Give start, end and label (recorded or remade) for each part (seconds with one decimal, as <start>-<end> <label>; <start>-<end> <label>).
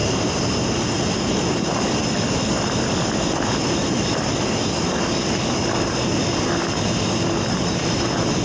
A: 0.0-8.4 recorded